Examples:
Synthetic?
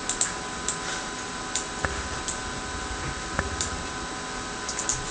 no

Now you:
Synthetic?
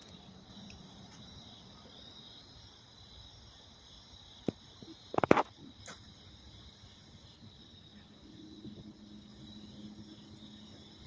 no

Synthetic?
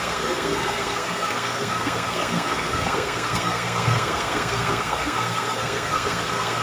yes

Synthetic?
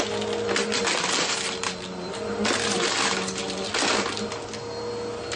no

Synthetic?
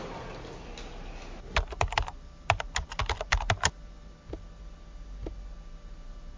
no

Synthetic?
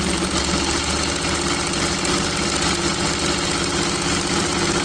no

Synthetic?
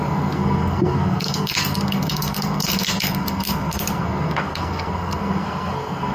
yes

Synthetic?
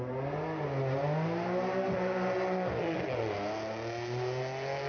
no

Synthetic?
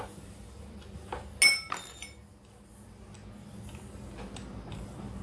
no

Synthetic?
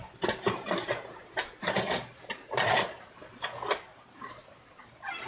yes